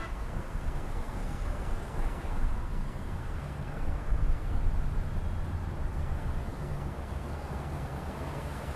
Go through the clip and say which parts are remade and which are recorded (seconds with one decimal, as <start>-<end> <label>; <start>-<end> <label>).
0.0-4.6 remade; 4.6-5.9 recorded; 5.9-8.8 remade